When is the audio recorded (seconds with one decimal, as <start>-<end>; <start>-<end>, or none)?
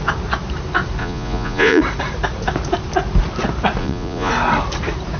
0.0-1.0; 1.8-3.8; 4.3-5.2